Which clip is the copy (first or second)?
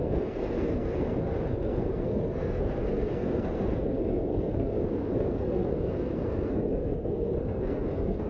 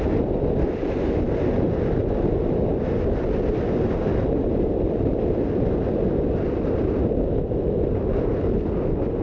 first